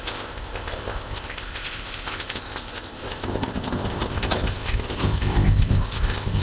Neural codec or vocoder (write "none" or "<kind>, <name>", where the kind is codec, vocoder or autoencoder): codec, ZipCodec